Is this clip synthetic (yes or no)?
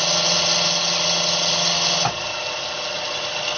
no